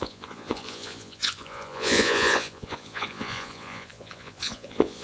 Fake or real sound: fake